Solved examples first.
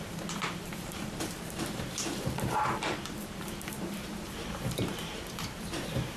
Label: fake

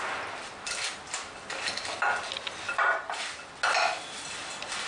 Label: real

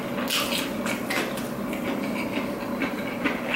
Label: real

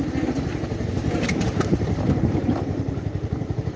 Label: fake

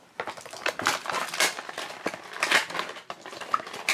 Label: real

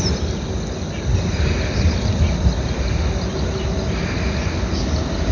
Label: real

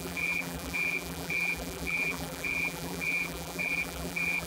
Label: fake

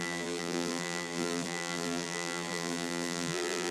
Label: fake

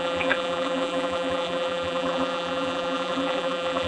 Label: fake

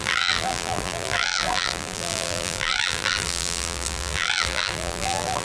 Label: fake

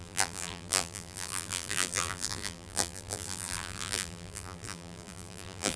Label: fake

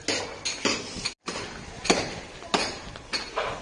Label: real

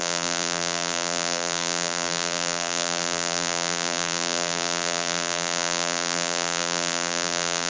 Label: fake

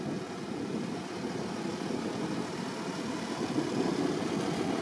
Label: real